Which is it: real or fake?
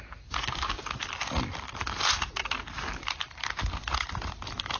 real